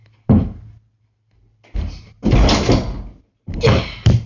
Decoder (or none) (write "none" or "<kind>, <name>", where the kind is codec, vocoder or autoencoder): none